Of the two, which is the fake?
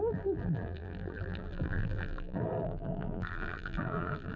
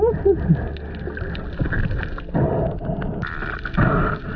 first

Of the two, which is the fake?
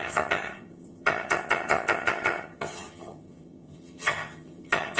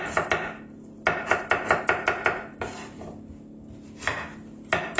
first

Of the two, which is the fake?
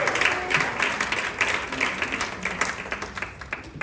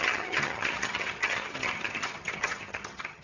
second